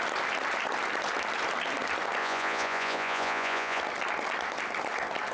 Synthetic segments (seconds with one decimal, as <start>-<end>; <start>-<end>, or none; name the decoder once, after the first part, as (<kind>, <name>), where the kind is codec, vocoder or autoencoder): 2.2-3.8 (vocoder, Vocos)